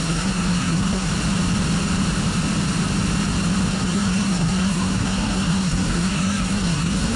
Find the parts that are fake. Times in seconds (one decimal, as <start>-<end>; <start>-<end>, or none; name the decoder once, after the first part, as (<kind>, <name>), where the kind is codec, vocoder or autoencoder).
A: 0.0-1.1 (codec, SNAC); 3.7-7.2